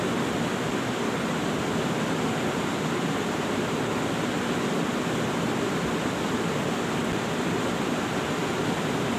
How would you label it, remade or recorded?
recorded